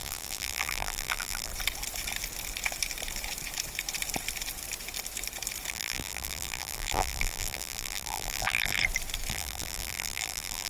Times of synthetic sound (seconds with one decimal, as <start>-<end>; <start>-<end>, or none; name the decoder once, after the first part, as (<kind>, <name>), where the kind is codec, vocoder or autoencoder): 0.0-1.5 (vocoder, BigVGAN v2); 5.7-8.8; 9.3-10.7